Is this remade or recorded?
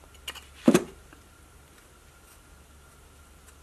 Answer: recorded